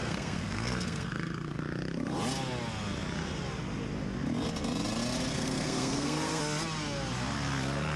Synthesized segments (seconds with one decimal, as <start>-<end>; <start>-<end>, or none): 0.0-1.6; 5.3-6.4